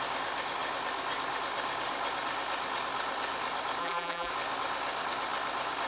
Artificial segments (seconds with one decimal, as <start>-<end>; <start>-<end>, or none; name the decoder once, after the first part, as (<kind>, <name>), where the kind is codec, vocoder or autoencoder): 3.8-4.3 (vocoder, BigVGAN v2)